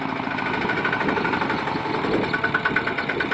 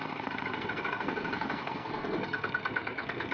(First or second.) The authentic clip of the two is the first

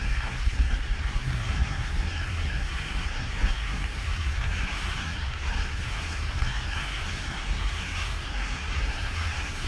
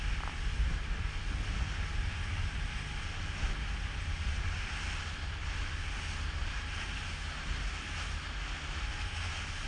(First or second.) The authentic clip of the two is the second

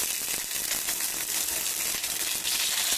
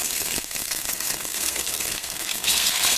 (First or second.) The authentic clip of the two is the first